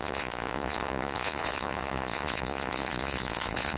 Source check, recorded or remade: remade